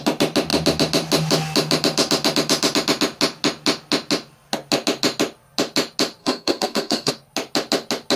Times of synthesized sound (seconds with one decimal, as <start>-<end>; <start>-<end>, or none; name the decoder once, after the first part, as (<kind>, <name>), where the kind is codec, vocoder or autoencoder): 6.2-7.1 (codec, SNAC)